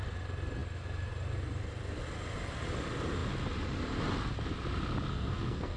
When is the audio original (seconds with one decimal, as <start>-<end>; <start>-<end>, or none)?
0.0-5.1